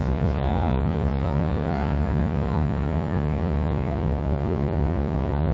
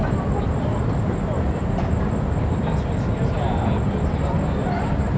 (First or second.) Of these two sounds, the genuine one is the second